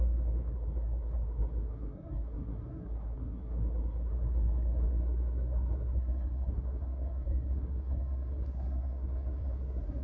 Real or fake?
fake